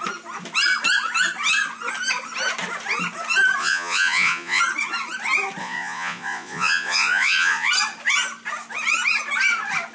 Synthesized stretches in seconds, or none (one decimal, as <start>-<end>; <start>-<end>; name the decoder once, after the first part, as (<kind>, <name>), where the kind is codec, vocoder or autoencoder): 3.6-4.6 (vocoder, Vocos); 5.6-7.7